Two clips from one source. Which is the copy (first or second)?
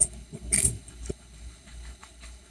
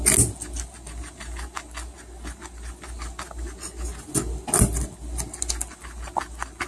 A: first